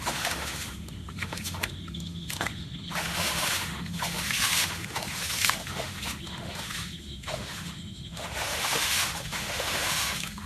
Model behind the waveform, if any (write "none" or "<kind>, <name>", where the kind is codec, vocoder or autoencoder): autoencoder, DAC-VAE